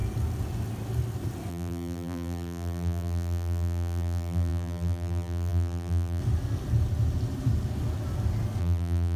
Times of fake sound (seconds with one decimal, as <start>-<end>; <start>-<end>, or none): 1.5-6.2; 8.6-9.2